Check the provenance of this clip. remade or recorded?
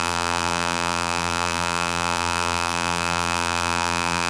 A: remade